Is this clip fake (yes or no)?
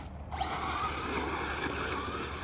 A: no